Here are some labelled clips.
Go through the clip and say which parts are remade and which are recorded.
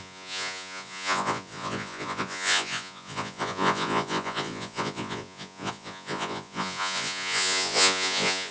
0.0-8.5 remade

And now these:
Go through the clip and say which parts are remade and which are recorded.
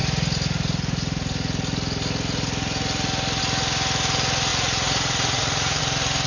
0.0-4.5 recorded; 4.5-5.8 remade; 5.8-6.3 recorded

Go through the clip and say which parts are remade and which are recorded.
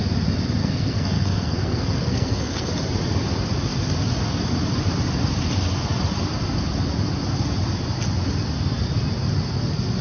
0.0-0.6 recorded; 0.6-2.7 remade; 2.7-10.0 recorded